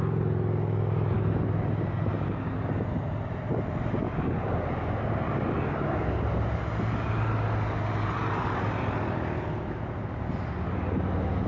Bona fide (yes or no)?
yes